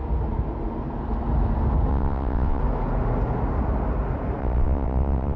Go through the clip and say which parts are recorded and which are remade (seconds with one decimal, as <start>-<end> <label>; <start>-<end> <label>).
0.0-1.9 recorded; 1.9-2.6 remade; 2.6-4.4 recorded; 4.4-5.4 remade